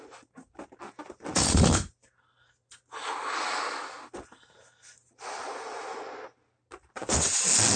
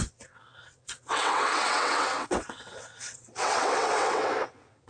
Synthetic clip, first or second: second